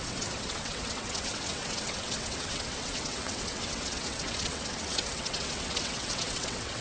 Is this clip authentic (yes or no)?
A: no